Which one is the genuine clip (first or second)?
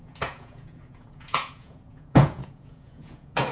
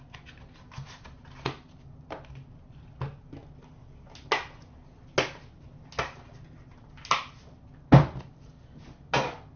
second